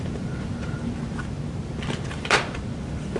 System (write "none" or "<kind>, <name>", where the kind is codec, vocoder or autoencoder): none